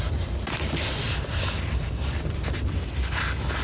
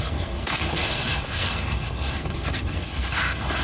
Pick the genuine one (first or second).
first